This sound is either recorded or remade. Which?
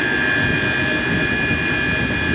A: recorded